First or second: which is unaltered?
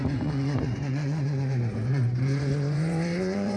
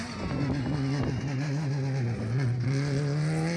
second